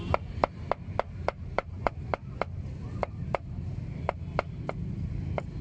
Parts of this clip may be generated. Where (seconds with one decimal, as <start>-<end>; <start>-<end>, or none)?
1.2-1.9; 3.0-4.2